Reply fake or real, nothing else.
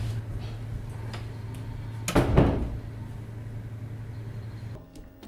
real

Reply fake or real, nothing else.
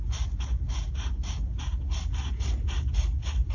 real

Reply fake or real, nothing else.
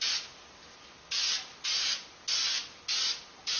real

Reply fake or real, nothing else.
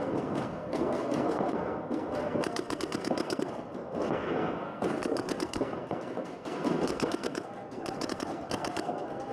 fake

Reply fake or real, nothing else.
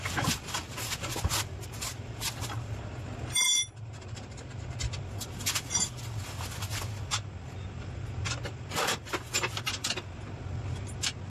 fake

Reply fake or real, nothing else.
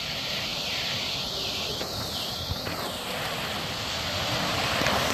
real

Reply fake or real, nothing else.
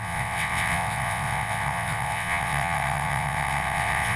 fake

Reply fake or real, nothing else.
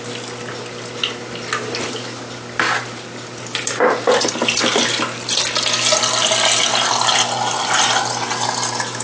real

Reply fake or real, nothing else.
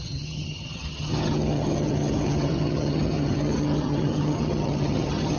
fake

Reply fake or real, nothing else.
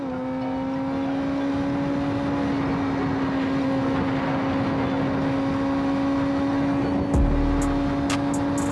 real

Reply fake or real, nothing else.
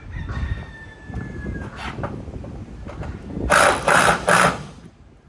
real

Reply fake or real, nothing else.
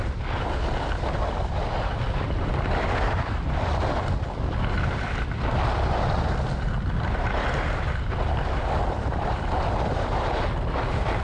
real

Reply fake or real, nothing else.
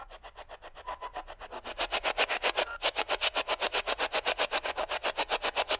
fake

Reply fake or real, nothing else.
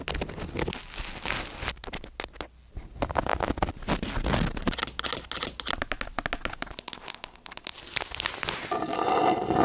real